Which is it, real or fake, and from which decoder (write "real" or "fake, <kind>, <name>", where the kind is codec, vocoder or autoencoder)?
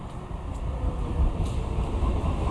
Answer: fake, vocoder, BigVGAN v2